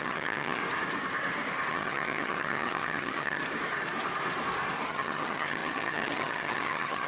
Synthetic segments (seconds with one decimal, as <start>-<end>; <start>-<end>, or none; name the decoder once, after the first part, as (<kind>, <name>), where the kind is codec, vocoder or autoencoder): 0.0-0.6 (vocoder, HiFi-GAN); 1.7-3.4; 4.9-7.1